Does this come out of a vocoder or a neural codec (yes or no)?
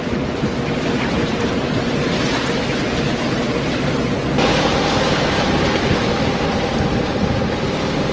no